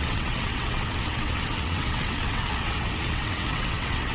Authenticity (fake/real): fake